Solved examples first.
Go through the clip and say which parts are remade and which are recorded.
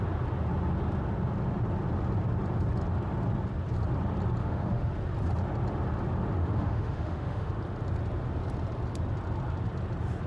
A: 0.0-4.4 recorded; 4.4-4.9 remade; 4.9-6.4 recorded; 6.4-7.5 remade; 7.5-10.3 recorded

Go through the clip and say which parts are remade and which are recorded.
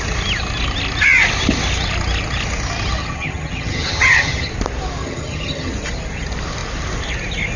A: 0.0-3.0 recorded; 3.0-4.5 remade; 4.5-5.0 recorded; 5.0-5.7 remade; 5.7-7.6 recorded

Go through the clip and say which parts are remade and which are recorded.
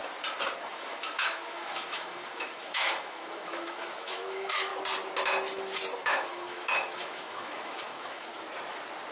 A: 0.0-0.7 recorded; 0.7-4.7 remade; 4.7-6.0 recorded; 6.0-8.3 remade; 8.3-9.1 recorded